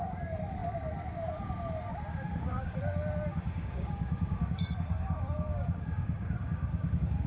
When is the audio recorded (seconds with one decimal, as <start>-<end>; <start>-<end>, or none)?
0.0-2.1; 2.8-3.3

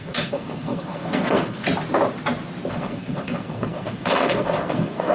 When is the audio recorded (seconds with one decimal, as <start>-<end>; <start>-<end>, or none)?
1.6-2.7

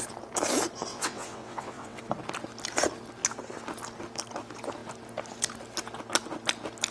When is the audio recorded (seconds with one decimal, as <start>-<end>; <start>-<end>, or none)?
0.0-0.9; 2.0-6.9

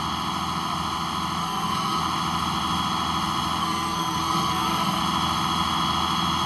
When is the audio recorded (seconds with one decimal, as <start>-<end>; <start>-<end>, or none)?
0.0-1.4; 2.0-3.6; 5.0-6.5

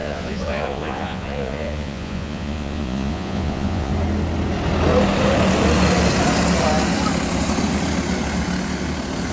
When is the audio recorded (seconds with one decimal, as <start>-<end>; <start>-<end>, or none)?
3.9-9.3

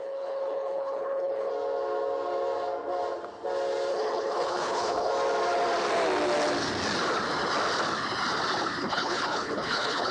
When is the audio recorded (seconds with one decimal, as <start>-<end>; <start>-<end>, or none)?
1.5-3.9; 5.1-8.8

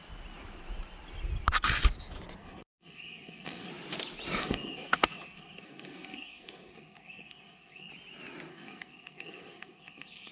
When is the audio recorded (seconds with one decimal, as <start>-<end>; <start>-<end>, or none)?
0.0-2.4; 3.7-4.4; 7.9-8.5